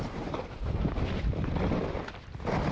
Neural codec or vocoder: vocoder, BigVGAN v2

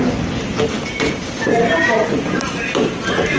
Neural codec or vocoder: none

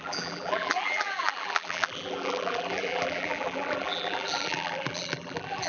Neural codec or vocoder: vocoder, BigVGAN v2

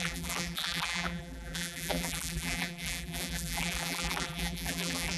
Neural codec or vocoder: vocoder, BigVGAN v2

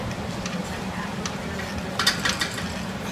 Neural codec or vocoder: none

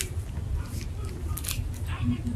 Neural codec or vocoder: none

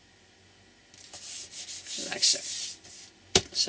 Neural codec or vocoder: none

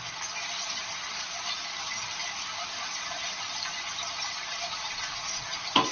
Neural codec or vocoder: vocoder, BigVGAN v2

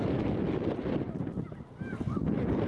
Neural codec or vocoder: vocoder, BigVGAN v2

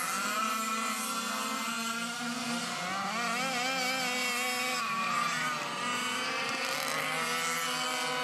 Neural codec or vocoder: none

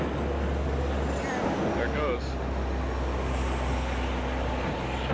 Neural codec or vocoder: none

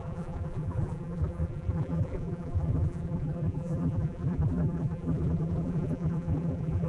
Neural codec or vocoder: vocoder, BigVGAN v2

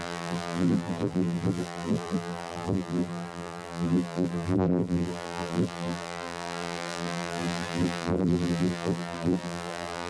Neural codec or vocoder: vocoder, BigVGAN v2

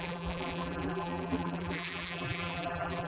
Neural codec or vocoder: vocoder, BigVGAN v2